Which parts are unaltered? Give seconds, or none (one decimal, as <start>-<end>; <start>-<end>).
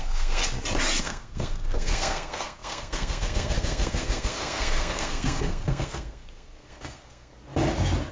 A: 0.4-1.0; 7.3-8.1